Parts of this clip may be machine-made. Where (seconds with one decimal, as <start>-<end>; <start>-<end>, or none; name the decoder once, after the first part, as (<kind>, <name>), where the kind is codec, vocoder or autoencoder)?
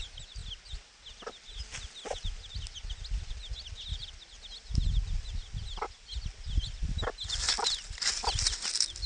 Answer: none